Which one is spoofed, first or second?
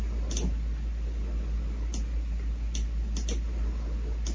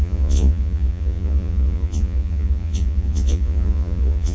second